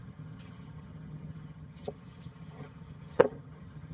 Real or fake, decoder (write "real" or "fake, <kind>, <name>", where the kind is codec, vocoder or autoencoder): fake, vocoder, HiFi-GAN